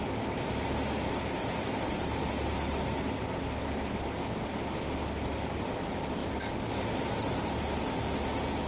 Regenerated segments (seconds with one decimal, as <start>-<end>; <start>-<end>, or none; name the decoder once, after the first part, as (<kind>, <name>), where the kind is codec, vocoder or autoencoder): none